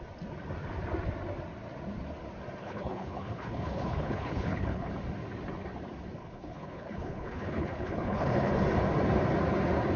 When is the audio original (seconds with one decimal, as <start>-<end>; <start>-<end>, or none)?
0.0-2.6; 4.9-6.2; 8.5-10.0